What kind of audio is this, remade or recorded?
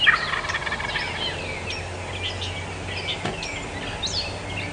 recorded